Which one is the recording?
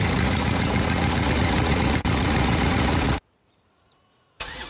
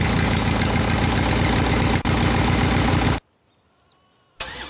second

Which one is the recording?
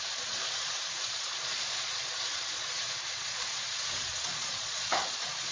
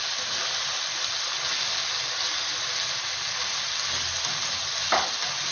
second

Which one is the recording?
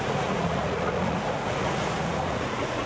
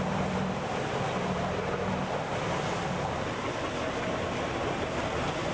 second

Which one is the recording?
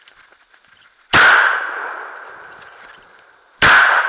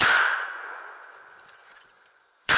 first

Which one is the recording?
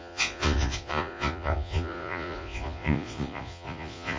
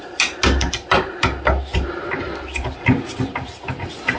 second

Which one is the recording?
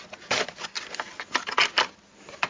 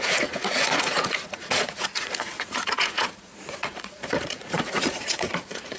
first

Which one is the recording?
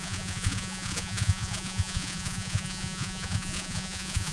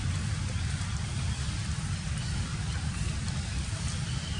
second